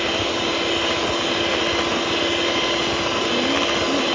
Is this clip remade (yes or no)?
no